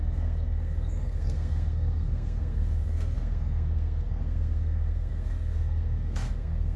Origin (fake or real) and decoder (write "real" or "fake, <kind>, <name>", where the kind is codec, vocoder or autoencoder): fake, codec, SNAC